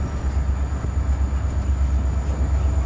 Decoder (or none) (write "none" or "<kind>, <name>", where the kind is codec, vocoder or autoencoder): none